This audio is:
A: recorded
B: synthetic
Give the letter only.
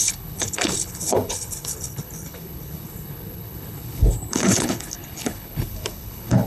B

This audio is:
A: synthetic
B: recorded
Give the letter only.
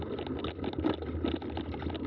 B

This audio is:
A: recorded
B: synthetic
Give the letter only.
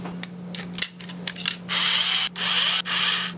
A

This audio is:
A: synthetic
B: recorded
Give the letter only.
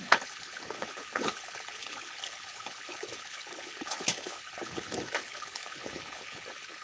A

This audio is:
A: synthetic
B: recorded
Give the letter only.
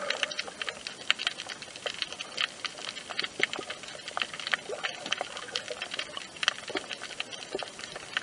B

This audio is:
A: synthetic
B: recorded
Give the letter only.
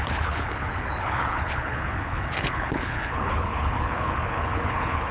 A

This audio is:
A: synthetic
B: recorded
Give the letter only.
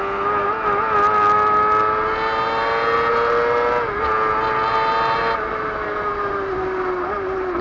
B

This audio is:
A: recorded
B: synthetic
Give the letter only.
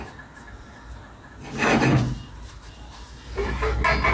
A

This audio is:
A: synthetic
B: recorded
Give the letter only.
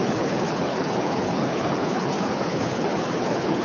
A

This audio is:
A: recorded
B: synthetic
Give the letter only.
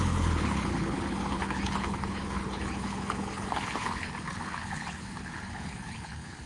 B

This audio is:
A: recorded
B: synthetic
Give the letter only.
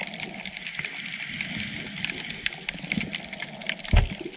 A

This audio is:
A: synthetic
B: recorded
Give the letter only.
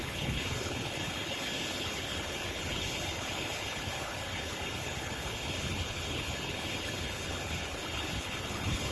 A